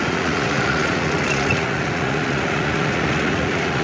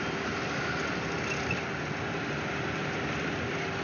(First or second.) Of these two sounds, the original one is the second